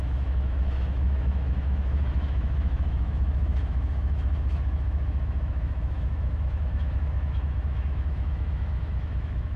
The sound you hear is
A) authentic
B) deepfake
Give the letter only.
B